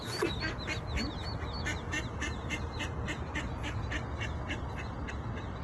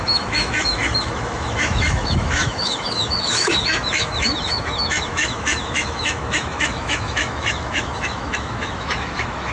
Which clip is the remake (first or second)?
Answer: second